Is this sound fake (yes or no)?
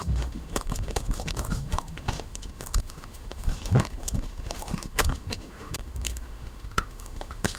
yes